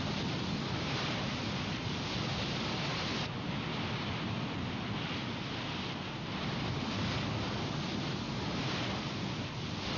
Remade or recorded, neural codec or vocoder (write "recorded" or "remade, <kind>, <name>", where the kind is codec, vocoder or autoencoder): recorded